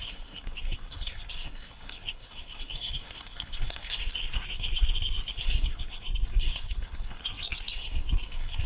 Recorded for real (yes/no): no